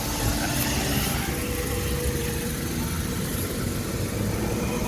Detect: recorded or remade recorded